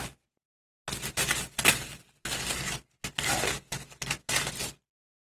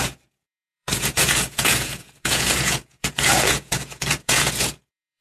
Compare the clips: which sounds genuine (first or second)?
first